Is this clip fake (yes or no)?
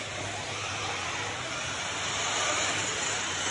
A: no